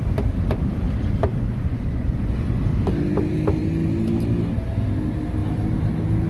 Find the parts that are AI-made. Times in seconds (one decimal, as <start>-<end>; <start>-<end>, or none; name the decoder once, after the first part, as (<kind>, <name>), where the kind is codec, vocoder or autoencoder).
1.5-2.6 (vocoder, Vocos)